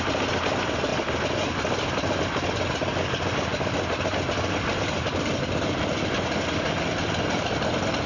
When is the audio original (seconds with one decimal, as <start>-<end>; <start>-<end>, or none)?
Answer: 0.0-0.9; 1.4-3.5